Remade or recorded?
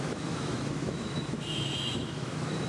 remade